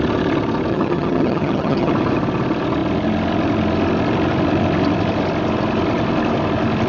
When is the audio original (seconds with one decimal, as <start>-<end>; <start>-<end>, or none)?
0.0-0.7; 1.9-6.9